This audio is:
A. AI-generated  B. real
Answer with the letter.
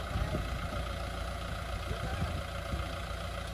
B